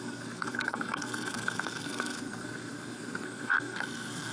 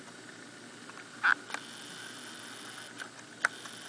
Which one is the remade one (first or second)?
first